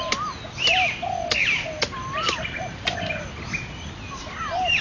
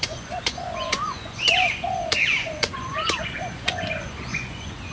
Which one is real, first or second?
first